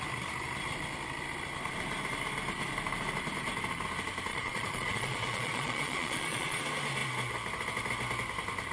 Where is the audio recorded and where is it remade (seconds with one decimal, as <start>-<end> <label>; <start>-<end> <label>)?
0.0-4.3 recorded; 4.3-6.6 remade; 6.6-8.7 recorded